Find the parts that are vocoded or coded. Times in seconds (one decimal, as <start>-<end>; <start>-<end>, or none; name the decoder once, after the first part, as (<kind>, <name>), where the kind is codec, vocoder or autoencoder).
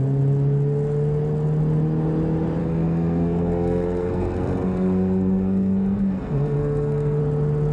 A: 2.6-7.2 (codec, SNAC)